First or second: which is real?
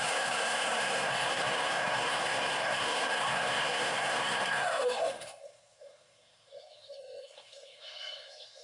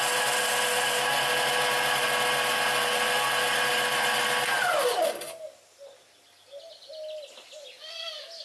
second